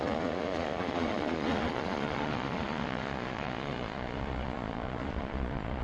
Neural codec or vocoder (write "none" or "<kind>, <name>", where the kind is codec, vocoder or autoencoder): vocoder, Vocos